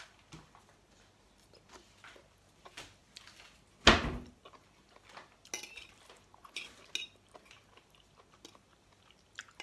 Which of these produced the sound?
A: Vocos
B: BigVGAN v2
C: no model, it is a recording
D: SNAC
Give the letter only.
C